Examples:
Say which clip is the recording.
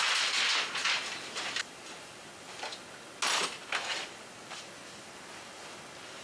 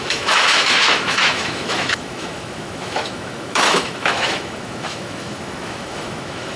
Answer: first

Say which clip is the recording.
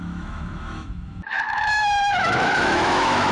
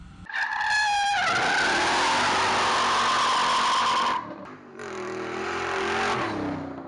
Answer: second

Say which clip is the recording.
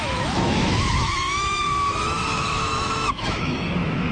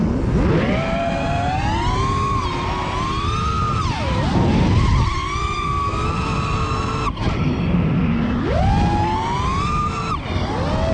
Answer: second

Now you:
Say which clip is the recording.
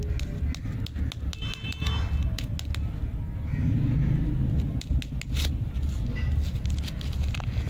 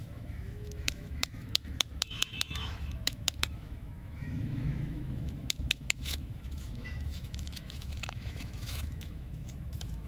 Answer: first